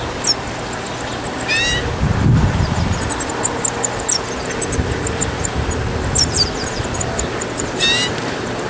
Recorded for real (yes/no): yes